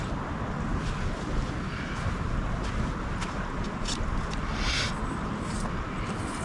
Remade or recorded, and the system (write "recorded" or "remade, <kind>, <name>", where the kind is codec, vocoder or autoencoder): recorded